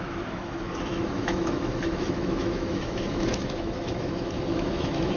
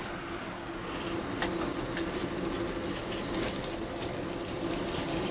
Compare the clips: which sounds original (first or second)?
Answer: second